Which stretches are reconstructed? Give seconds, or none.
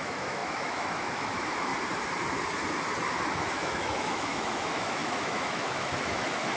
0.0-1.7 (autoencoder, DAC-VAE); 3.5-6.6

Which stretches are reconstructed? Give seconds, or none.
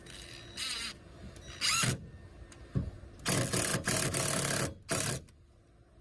none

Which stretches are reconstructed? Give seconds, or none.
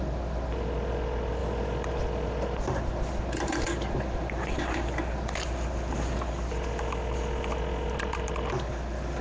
1.4-4.6 (vocoder, BigVGAN v2)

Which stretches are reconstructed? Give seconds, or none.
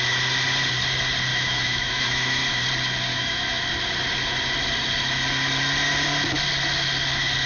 1.3-2.4 (autoencoder, DAC-VAE); 3.1-3.6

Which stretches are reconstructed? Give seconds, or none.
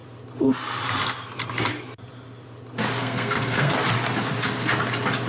3.0-3.7 (codec, SNAC)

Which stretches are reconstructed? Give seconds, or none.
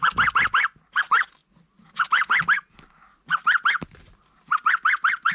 none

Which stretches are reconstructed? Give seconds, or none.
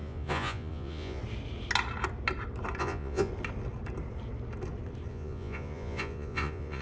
0.0-1.2 (vocoder, Vocos); 2.8-3.3; 5.1-6.8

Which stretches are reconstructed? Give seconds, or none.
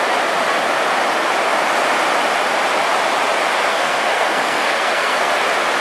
3.7-5.3 (codec, SNAC)